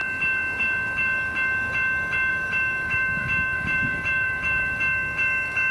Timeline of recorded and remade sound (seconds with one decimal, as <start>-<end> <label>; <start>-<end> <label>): 0.0-2.3 recorded; 2.3-4.8 remade; 4.8-5.7 recorded